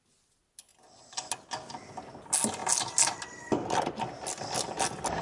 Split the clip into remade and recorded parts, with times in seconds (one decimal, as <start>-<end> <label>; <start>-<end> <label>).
0.0-5.2 recorded